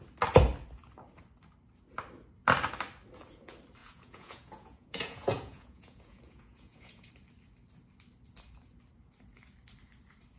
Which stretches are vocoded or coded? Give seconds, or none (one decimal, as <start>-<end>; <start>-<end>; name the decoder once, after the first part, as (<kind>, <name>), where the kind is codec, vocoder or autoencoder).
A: 3.8-7.1 (vocoder, Vocos)